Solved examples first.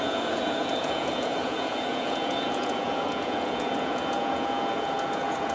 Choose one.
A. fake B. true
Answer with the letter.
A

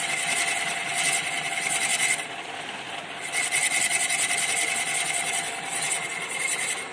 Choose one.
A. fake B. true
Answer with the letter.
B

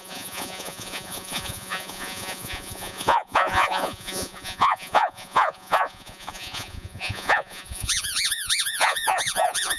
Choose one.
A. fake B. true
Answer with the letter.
A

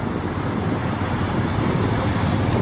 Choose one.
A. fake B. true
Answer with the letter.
B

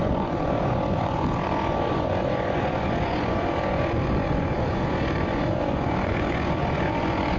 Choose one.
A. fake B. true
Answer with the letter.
A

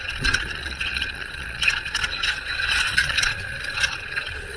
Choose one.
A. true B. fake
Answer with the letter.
B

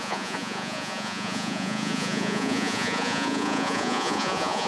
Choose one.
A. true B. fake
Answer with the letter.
B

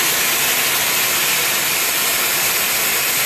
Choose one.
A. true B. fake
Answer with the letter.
A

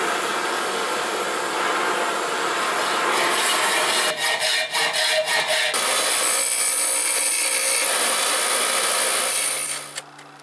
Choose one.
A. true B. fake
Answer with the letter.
A